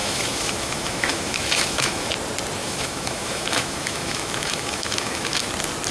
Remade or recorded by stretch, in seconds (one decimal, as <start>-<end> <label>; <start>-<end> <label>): 0.0-2.1 remade; 2.1-2.6 recorded; 2.6-5.5 remade; 5.5-5.9 recorded